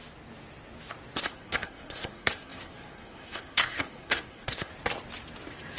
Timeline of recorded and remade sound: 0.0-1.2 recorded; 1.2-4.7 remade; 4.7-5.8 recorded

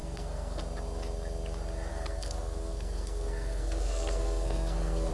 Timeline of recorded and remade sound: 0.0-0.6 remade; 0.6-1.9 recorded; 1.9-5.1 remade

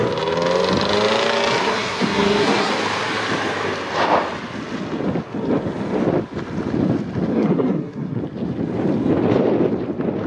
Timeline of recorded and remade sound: 0.0-1.6 recorded; 1.6-2.7 remade; 2.7-7.3 recorded; 7.3-8.2 remade; 8.2-10.3 recorded